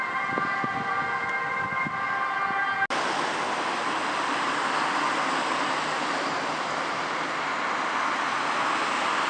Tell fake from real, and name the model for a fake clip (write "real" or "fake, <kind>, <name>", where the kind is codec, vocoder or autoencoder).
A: real